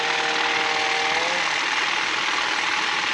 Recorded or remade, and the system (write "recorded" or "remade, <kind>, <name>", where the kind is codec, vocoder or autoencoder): recorded